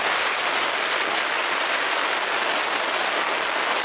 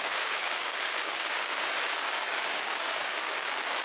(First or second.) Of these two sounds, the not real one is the second